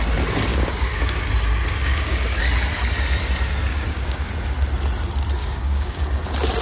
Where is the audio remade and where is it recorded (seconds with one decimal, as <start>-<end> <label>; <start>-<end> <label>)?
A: 0.0-0.5 recorded; 0.5-1.3 remade; 1.3-1.8 recorded; 1.8-2.4 remade; 2.4-3.7 recorded; 3.7-4.3 remade; 4.3-5.4 recorded; 5.4-6.0 remade; 6.0-6.6 recorded

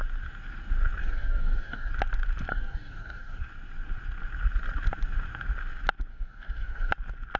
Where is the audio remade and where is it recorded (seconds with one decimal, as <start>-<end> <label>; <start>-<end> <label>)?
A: 0.0-1.0 recorded; 1.0-1.9 remade; 1.9-2.5 recorded; 2.5-3.4 remade; 3.4-6.1 recorded; 6.1-6.9 remade; 6.9-7.4 recorded

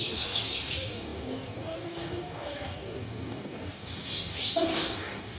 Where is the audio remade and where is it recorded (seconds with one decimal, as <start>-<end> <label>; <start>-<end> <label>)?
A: 0.0-5.4 remade

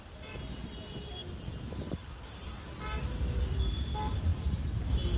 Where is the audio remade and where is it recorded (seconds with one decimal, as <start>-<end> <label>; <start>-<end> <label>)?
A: 0.0-5.2 recorded